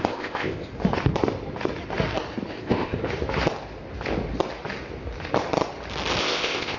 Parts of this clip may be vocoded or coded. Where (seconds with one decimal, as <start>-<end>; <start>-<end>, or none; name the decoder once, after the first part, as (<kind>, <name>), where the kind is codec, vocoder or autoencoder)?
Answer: 0.0-0.7 (codec, ZipCodec); 2.5-3.0; 6.2-6.8

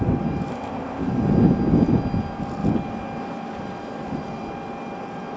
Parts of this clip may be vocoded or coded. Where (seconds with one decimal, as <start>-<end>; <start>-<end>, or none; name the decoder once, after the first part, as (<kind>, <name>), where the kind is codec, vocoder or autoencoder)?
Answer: 0.5-1.1 (codec, ZipCodec)

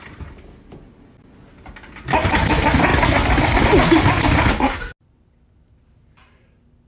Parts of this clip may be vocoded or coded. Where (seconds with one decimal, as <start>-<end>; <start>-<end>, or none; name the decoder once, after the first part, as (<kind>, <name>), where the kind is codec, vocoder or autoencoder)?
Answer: none

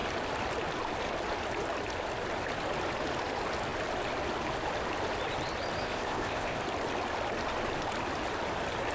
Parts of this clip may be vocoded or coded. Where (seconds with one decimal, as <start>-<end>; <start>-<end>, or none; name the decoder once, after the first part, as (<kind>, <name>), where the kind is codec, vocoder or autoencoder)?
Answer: 5.8-6.6 (codec, ZipCodec)